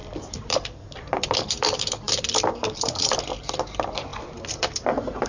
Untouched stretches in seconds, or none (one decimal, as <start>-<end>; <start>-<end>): 3.2-4.1